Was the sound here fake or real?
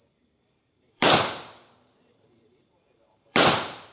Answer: fake